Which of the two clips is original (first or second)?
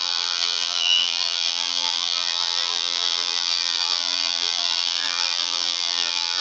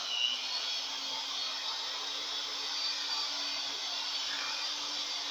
second